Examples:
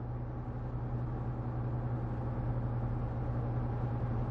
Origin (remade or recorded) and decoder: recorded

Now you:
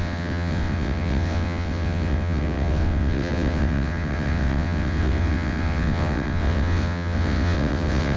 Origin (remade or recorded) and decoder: remade, vocoder, WaveNeXt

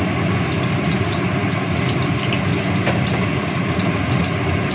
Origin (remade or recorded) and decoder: recorded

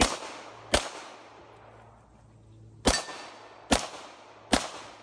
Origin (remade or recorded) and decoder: recorded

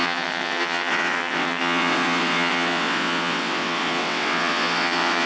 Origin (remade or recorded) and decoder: remade, vocoder, WaveNeXt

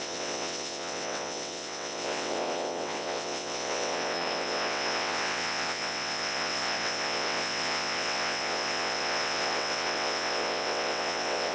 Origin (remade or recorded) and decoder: remade, vocoder, WaveNeXt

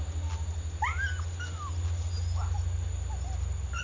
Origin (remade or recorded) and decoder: recorded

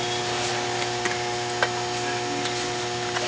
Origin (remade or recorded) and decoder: recorded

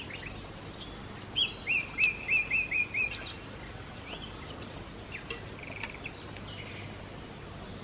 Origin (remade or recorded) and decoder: recorded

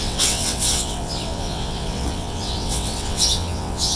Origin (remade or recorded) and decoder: remade, vocoder, WaveNeXt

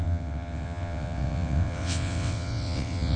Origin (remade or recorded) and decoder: remade, vocoder, WaveNeXt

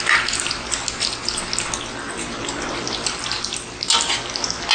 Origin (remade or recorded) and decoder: recorded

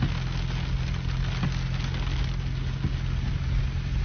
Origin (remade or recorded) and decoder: recorded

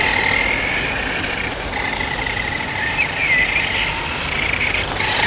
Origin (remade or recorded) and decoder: recorded